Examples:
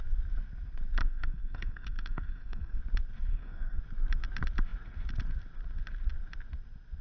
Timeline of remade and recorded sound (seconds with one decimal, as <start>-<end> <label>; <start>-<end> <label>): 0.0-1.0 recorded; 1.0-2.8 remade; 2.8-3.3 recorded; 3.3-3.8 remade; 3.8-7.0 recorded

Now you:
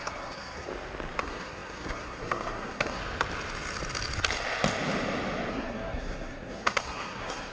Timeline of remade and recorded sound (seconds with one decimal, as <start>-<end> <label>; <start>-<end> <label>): 0.0-0.7 remade; 0.7-1.2 recorded; 1.2-3.0 remade; 3.0-5.5 recorded; 5.5-7.5 remade

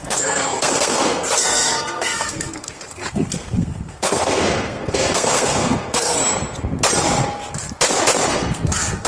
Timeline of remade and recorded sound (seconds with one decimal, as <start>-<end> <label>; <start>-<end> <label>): 0.0-6.2 remade; 6.2-8.3 recorded; 8.3-9.1 remade

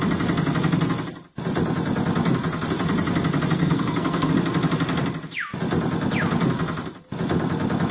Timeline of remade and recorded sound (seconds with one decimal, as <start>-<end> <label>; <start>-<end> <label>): 0.0-3.6 recorded; 3.6-4.3 remade; 4.3-7.9 recorded

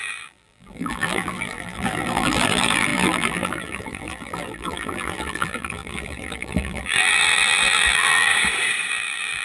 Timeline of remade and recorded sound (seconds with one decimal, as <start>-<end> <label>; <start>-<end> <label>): 0.0-8.3 remade; 8.3-8.9 recorded; 8.9-9.4 remade

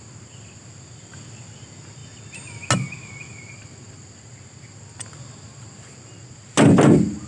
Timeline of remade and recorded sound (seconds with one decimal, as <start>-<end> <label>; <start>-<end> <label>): 0.0-7.3 recorded